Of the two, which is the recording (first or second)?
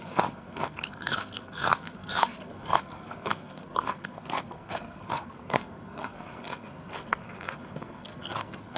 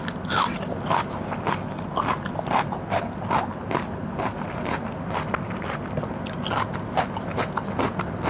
second